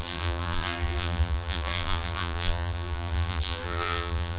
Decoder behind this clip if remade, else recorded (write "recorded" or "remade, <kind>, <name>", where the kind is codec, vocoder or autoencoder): remade, vocoder, BigVGAN v2